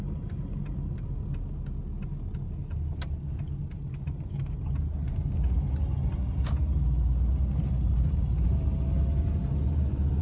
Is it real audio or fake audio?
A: real